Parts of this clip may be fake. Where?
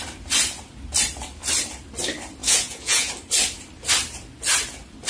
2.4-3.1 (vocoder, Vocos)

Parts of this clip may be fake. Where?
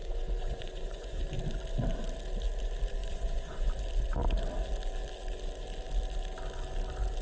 0.0-1.2 (vocoder, Vocos); 3.0-3.7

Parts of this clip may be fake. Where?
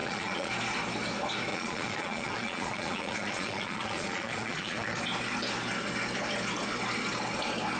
0.0-0.5 (vocoder, Vocos); 1.5-5.0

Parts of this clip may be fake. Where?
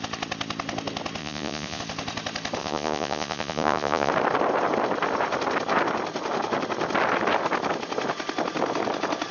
1.2-1.8 (vocoder, Vocos); 2.6-4.1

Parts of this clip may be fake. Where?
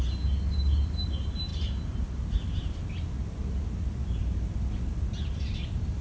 none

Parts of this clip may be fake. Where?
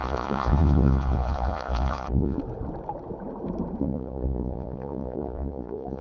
0.0-2.4 (vocoder, Vocos); 3.8-6.0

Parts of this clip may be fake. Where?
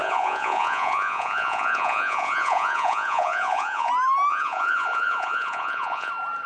0.0-3.9 (vocoder, Vocos); 4.3-6.1